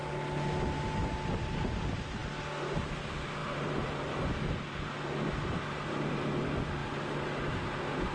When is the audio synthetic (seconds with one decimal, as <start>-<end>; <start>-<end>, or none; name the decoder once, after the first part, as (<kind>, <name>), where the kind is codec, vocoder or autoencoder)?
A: 3.4-4.0 (vocoder, BigVGAN v2)